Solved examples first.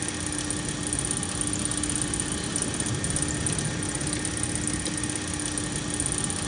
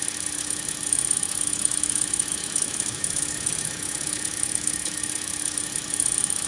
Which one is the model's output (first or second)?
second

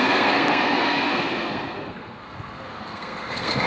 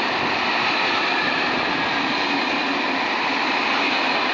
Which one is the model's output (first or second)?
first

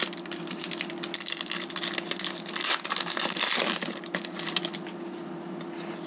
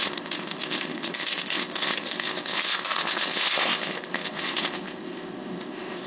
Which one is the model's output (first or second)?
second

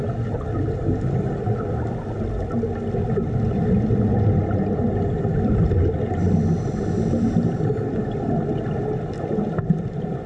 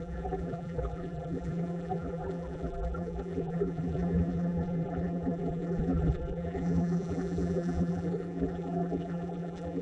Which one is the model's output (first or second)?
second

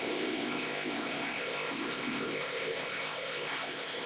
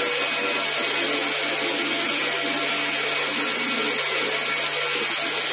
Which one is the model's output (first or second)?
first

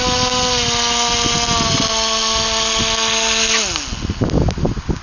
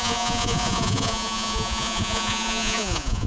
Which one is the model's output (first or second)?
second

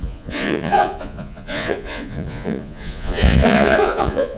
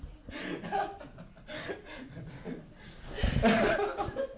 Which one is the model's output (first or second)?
first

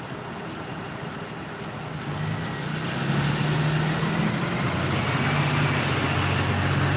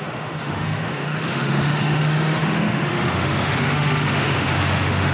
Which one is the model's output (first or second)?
second